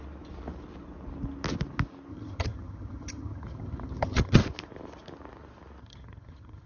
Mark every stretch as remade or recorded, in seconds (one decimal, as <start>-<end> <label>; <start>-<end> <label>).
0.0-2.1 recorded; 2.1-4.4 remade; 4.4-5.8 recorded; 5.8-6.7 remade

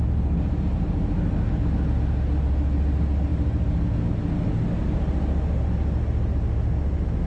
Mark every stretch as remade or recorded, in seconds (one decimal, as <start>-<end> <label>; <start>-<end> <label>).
0.0-7.3 recorded

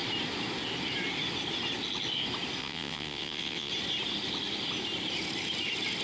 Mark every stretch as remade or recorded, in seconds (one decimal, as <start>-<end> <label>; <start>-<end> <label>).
0.0-2.6 recorded; 2.6-3.7 remade; 3.7-6.0 recorded

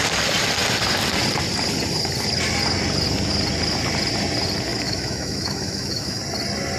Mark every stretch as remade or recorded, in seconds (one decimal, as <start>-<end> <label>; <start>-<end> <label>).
0.0-4.7 recorded; 4.7-6.2 remade; 6.2-6.8 recorded

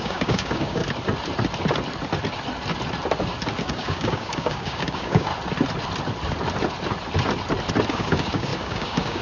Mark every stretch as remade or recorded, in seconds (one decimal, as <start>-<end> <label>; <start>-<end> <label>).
0.0-0.8 remade; 0.8-3.6 recorded; 3.6-5.3 remade; 5.3-7.9 recorded; 7.9-9.2 remade

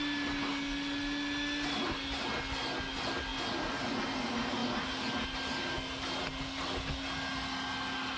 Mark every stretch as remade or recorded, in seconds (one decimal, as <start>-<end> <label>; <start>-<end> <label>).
0.0-8.2 recorded

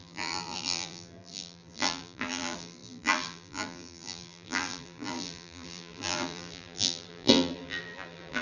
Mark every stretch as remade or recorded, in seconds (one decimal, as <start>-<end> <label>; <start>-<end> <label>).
0.0-8.4 remade

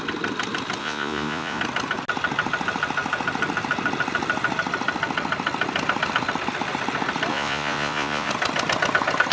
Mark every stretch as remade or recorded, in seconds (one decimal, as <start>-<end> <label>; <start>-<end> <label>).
0.0-0.8 recorded; 0.8-1.6 remade; 1.6-7.3 recorded; 7.3-8.3 remade; 8.3-9.3 recorded